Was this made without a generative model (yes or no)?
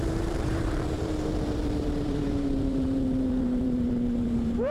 no